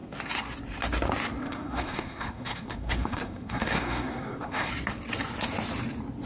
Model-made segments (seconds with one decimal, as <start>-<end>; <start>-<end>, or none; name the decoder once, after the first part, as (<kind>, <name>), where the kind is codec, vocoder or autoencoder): 1.4-4.7 (codec, SNAC)